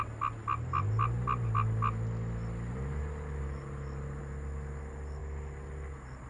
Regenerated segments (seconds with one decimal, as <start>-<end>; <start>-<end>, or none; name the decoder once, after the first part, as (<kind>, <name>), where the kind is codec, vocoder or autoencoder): none